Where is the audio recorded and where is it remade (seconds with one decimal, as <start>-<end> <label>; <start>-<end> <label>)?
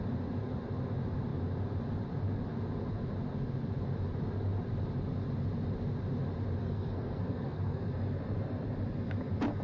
0.0-6.6 recorded; 6.6-7.8 remade; 7.8-9.6 recorded